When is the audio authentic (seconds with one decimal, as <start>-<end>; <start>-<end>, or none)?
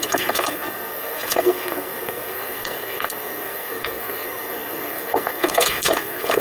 none